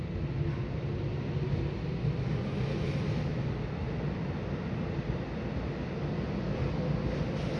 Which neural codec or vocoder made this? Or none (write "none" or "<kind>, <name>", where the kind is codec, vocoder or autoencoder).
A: none